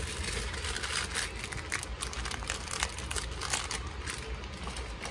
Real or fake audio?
real